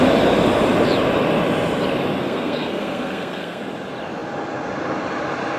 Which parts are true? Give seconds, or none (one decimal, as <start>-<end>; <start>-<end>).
0.0-2.2; 3.6-5.6